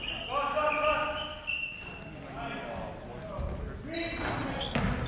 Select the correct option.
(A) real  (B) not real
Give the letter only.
A